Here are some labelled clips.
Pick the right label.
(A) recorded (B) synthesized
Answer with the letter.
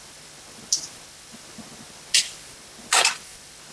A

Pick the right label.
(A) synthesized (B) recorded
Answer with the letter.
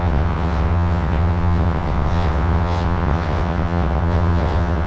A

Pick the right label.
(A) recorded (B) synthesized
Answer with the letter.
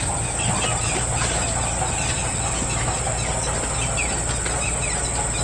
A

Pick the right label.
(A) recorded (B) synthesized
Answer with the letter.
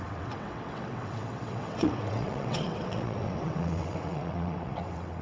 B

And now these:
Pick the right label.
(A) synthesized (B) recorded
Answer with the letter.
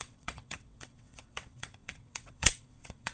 A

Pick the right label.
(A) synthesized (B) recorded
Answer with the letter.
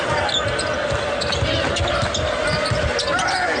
B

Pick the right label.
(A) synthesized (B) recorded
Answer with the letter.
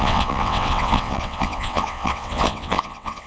A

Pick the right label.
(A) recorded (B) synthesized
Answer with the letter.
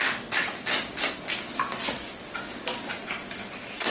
A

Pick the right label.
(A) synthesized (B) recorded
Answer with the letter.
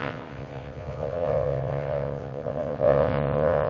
A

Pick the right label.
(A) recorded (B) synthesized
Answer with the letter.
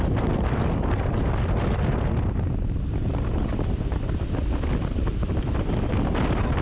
A